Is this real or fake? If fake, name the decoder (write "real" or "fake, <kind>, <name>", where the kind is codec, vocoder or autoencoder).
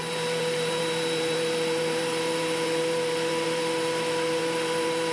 fake, vocoder, BigVGAN v2